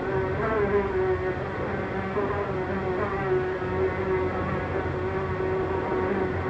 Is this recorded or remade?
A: recorded